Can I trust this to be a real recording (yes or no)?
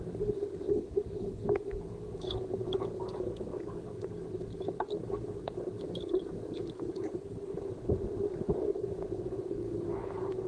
no